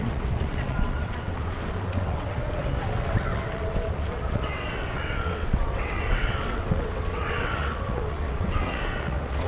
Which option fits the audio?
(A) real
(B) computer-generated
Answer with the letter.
B